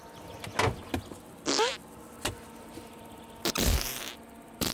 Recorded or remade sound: recorded